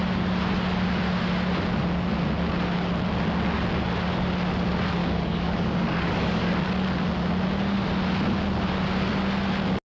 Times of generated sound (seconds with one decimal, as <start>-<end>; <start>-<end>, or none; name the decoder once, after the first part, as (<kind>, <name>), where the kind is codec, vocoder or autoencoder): 5.0-6.5 (codec, DAC)